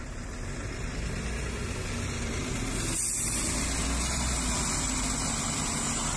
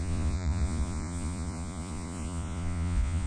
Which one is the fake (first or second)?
second